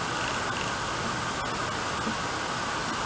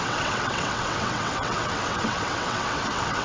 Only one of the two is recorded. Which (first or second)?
first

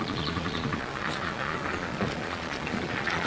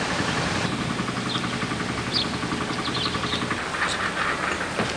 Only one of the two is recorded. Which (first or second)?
second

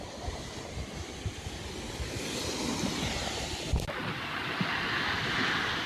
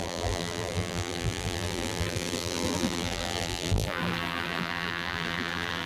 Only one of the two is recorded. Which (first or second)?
first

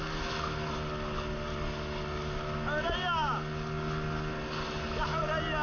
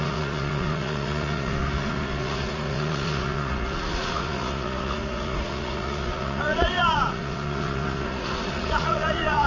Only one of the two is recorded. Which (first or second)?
first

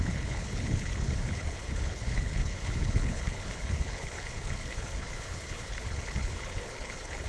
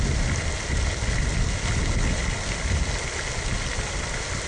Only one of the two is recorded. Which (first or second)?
second